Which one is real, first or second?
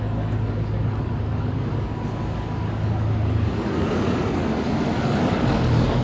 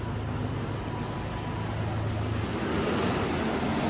second